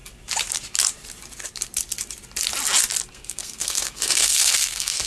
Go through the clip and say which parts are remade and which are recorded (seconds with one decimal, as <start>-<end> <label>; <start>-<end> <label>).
0.0-3.1 recorded; 3.1-5.1 remade